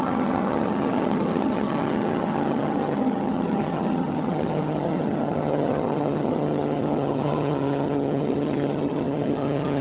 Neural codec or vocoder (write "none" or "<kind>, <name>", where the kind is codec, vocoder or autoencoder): vocoder, HiFi-GAN